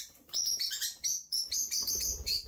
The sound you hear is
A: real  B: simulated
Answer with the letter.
B